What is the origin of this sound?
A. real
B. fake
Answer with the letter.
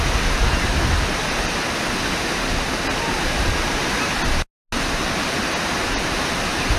A